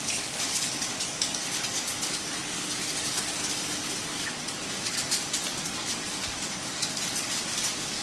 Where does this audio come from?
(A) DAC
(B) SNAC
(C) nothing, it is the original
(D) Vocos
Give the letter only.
A